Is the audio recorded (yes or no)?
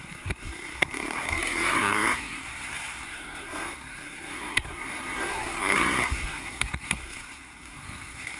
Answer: no